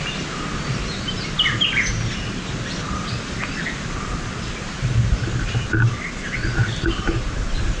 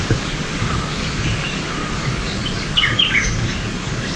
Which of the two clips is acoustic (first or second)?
first